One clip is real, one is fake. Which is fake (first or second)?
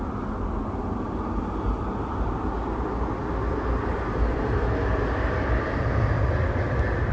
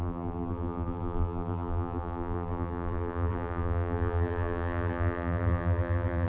second